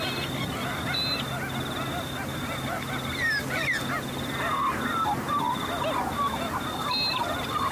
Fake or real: real